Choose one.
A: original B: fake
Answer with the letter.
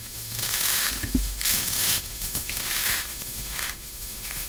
B